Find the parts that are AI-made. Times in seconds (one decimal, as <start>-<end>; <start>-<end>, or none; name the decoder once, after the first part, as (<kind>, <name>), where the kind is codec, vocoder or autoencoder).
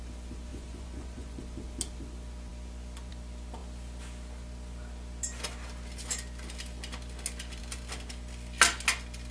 0.5-1.4 (vocoder, Vocos)